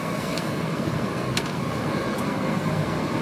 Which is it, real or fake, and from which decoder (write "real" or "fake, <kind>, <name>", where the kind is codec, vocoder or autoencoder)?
fake, codec, SNAC